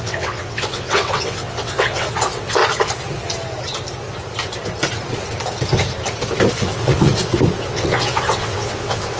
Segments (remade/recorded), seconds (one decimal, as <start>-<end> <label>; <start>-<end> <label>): 0.0-2.6 remade; 2.6-6.6 recorded; 6.6-7.1 remade; 7.1-7.6 recorded; 7.6-9.2 remade